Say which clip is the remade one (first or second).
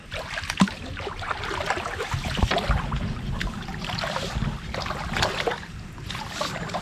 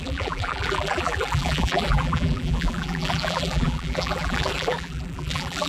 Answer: second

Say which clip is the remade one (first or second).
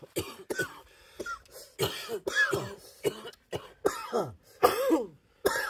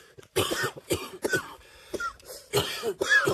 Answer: second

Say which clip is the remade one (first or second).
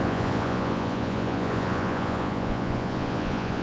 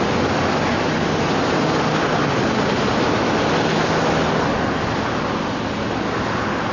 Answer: first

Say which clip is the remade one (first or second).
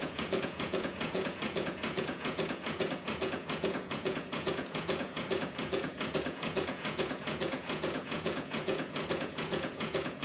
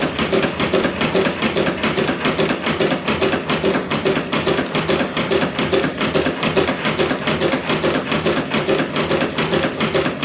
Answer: first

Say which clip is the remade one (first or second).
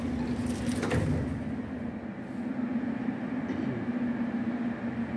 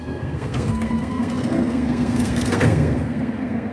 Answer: second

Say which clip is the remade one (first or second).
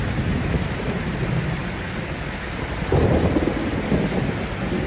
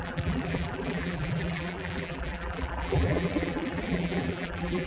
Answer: second